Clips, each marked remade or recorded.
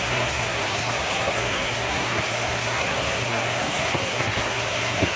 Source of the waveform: remade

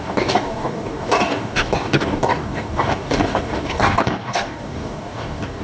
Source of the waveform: remade